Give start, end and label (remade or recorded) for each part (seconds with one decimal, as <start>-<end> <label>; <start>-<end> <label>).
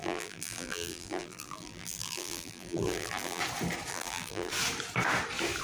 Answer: 0.0-3.4 remade; 3.4-3.9 recorded; 3.9-4.5 remade; 4.5-5.6 recorded